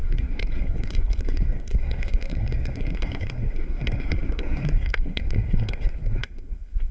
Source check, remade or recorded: remade